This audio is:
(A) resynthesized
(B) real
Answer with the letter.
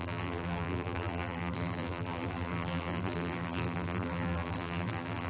A